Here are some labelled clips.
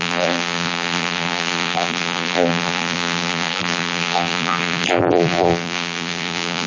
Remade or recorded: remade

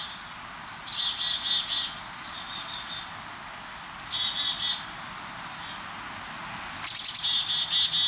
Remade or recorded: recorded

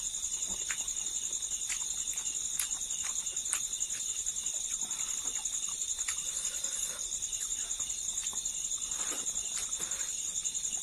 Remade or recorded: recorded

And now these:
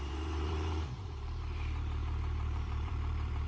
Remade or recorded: remade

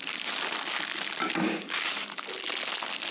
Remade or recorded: recorded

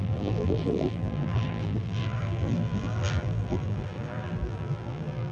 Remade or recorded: remade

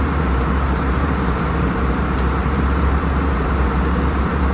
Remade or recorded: remade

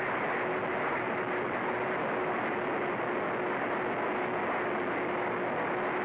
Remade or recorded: recorded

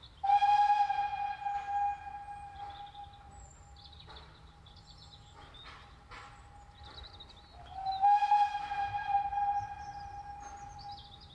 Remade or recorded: recorded